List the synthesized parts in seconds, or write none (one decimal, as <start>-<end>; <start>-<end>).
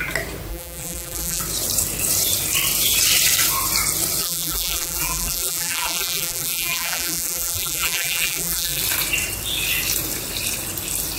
0.5-1.4; 4.2-8.8